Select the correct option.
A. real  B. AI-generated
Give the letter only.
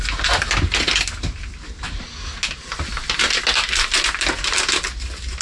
A